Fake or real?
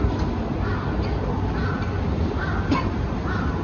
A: real